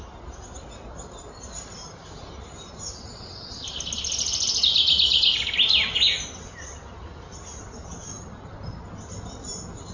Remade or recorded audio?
recorded